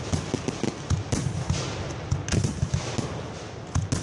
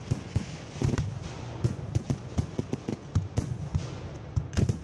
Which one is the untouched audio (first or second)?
first